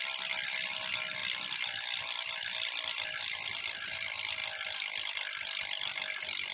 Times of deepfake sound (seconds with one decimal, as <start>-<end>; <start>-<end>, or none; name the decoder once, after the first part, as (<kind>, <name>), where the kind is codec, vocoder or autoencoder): none